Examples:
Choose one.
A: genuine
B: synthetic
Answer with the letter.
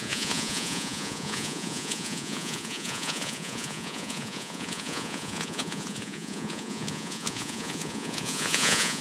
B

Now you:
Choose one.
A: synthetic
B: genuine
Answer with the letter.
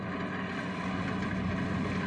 B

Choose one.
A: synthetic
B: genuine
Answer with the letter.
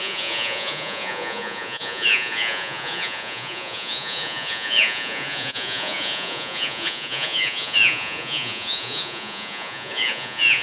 A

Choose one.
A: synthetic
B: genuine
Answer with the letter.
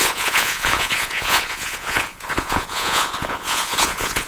A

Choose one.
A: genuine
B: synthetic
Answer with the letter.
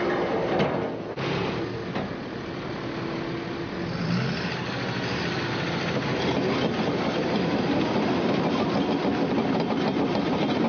A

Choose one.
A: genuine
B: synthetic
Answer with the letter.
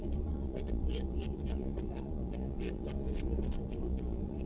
B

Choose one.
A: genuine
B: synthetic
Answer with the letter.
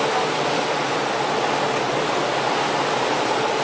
A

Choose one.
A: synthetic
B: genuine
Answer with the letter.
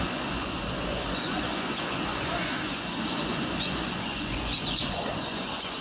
A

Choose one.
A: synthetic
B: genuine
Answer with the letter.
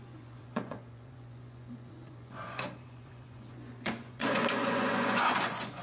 A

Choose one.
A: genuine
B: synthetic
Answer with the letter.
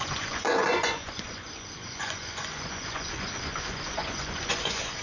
B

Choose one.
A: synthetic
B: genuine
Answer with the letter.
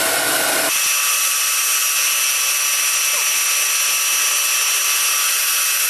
B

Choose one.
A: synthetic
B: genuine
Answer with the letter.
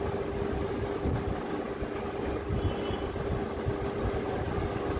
B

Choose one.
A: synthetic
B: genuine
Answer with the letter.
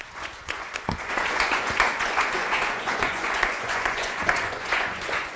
A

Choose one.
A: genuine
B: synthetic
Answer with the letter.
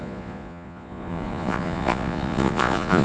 B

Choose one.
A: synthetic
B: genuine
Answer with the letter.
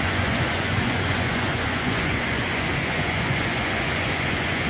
A